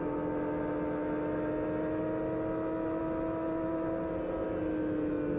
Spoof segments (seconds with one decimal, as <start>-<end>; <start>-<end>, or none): none